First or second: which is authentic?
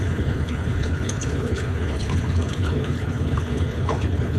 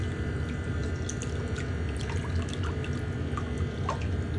second